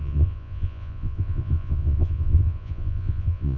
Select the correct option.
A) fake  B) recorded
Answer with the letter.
A